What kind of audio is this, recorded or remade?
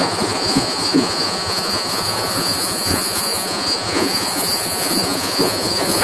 remade